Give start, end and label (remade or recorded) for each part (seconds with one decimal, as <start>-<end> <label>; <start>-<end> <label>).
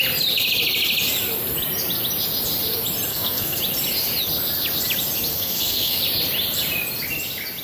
0.0-3.1 recorded; 3.1-3.6 remade; 3.6-5.3 recorded; 5.3-6.0 remade; 6.0-7.6 recorded